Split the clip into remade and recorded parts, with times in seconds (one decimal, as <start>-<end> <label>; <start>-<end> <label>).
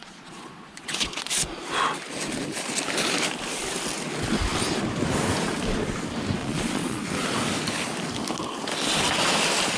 0.0-1.2 remade; 1.2-6.4 recorded; 6.4-7.0 remade; 7.0-9.8 recorded